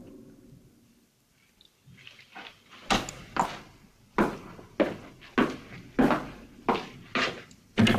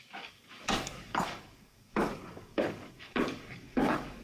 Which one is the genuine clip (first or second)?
first